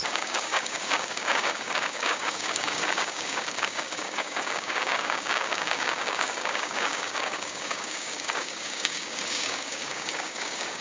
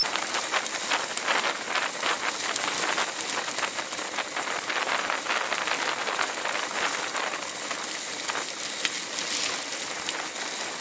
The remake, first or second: first